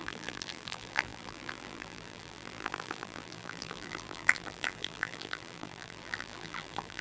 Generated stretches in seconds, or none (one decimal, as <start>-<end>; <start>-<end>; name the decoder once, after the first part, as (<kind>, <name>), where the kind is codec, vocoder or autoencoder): 0.0-7.0 (vocoder, BigVGAN v2)